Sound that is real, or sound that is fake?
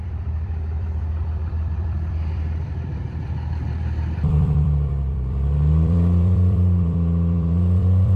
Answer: fake